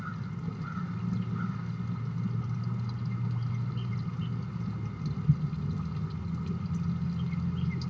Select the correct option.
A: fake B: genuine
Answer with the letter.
B